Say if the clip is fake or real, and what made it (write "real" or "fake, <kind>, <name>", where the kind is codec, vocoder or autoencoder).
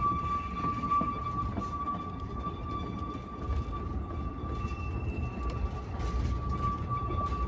real